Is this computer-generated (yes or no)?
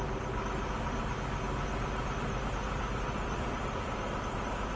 no